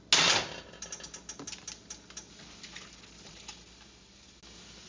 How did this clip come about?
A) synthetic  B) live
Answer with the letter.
B